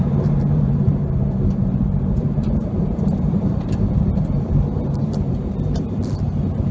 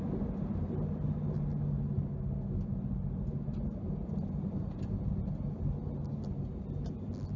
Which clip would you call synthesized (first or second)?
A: first